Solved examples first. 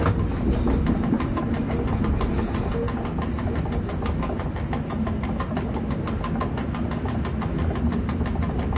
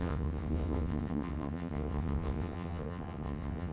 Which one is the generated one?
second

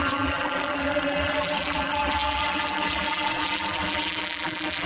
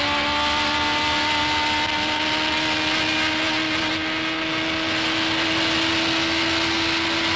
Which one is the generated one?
first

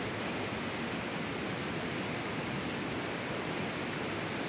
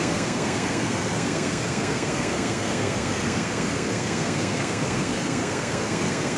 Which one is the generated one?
second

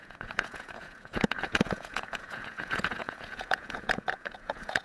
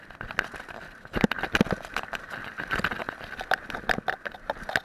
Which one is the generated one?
first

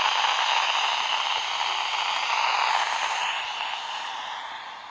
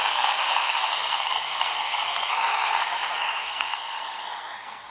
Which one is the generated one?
second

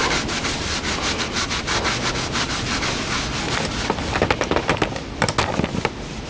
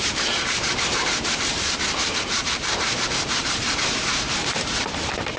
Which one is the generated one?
second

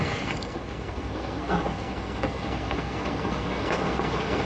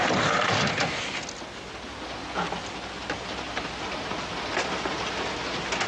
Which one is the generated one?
first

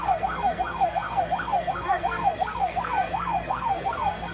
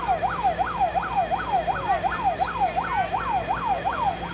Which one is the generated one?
first